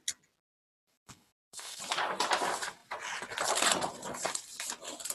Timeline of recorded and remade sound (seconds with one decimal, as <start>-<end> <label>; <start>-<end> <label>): 0.0-0.8 recorded; 0.8-1.8 remade; 1.8-5.1 recorded